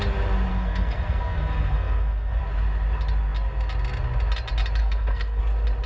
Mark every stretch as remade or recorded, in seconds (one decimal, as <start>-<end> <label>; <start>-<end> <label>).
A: 0.0-0.5 recorded; 0.5-2.4 remade; 2.4-4.8 recorded; 4.8-5.4 remade; 5.4-5.9 recorded